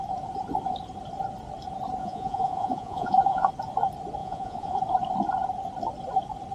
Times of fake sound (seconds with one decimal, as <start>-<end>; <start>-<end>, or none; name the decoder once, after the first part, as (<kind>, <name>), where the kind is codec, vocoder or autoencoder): 2.0-3.5 (vocoder, Vocos); 4.2-4.8